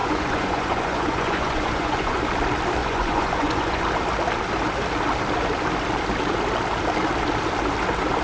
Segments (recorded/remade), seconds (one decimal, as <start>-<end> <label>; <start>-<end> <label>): 0.0-2.2 remade; 2.2-2.8 recorded; 2.8-3.8 remade; 3.8-8.2 recorded